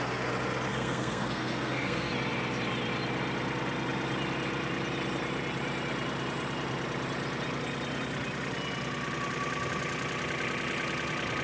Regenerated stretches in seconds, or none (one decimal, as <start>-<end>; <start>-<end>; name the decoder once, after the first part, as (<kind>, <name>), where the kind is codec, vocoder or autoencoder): 0.7-2.1 (codec, SNAC)